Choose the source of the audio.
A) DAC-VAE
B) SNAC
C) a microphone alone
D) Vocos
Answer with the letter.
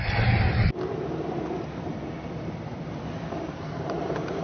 C